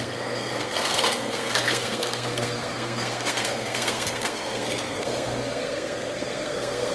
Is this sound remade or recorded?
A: remade